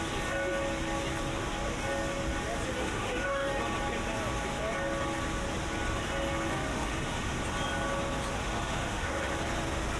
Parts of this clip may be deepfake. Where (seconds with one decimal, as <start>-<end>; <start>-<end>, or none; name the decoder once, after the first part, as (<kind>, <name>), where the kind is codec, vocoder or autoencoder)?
2.8-3.6 (autoencoder, DAC-VAE); 6.5-7.4; 8.4-9.3